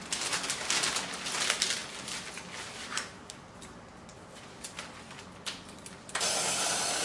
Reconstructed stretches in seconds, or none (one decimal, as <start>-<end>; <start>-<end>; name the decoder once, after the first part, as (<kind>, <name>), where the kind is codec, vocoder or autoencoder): none